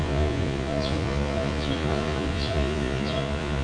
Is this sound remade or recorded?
remade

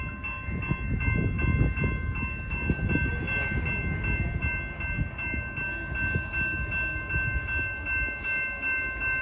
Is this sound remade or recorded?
recorded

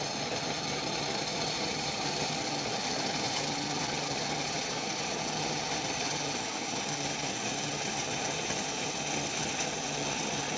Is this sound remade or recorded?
remade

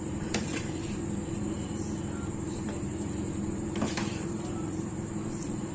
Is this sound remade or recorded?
remade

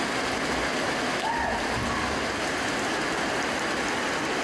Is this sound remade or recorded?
recorded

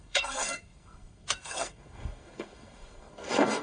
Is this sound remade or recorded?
remade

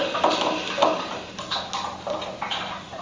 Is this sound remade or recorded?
recorded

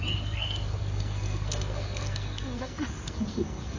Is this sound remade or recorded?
remade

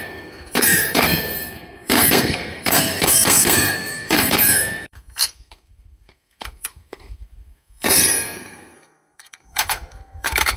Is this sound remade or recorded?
remade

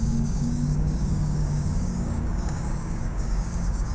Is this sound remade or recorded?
remade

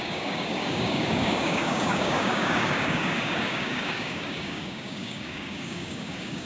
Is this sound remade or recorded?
remade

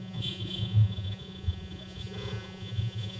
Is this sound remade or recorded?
remade